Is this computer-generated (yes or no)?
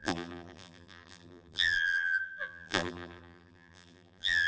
yes